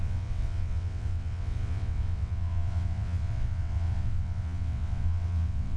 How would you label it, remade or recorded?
remade